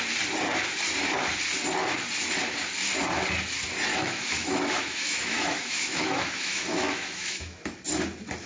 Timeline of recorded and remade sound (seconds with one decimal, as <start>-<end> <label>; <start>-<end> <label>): 0.0-3.9 recorded; 3.9-7.6 remade; 7.6-8.5 recorded